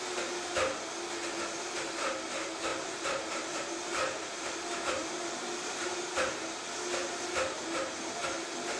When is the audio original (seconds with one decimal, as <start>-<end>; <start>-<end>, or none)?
0.0-2.7; 6.0-7.0; 8.2-8.8